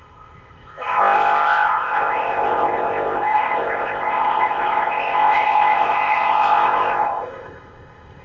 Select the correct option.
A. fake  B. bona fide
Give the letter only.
A